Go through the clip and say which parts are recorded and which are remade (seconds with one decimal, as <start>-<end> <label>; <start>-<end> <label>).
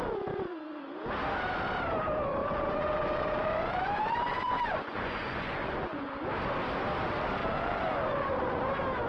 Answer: 0.0-2.4 recorded; 2.4-6.1 remade; 6.1-7.4 recorded; 7.4-8.7 remade; 8.7-9.1 recorded